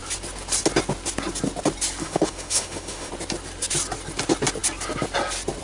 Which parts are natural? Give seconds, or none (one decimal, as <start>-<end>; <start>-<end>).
0.0-2.0; 3.1-5.6